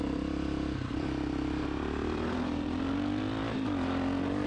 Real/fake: fake